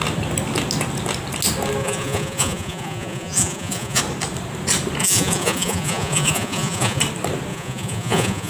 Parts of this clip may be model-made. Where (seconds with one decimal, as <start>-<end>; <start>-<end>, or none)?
1.8-4.0; 5.0-7.0; 7.5-8.5